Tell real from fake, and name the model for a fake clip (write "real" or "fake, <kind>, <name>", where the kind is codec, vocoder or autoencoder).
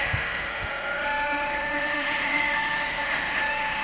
fake, autoencoder, DAC-VAE